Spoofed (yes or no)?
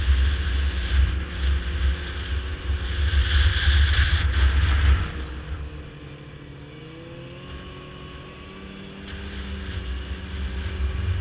no